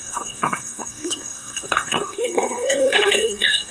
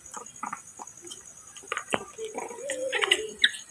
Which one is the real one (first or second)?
second